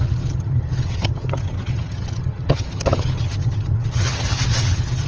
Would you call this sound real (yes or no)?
no